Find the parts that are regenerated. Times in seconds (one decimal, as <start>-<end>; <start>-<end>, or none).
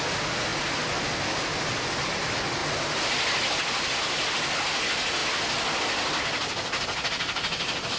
none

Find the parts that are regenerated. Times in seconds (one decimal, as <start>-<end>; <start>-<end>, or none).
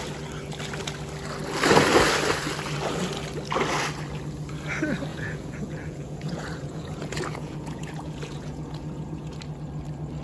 5.1-9.4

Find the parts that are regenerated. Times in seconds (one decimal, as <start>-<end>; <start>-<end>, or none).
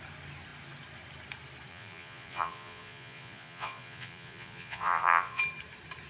1.7-5.4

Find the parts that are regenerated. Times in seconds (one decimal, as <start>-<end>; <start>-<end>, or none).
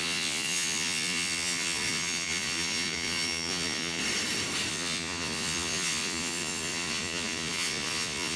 0.0-4.0; 4.7-8.4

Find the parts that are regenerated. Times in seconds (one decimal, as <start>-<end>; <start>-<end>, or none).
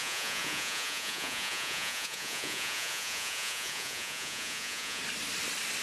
0.0-5.0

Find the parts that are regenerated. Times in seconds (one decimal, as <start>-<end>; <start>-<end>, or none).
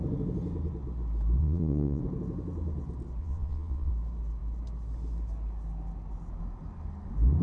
1.4-2.0; 3.2-3.9